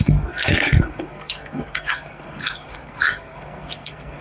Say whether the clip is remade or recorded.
remade